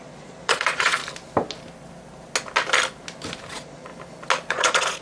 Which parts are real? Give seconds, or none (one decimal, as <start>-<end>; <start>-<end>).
1.0-3.5; 3.9-4.5